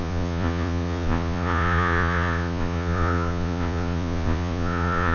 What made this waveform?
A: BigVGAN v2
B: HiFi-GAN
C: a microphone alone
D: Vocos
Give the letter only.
D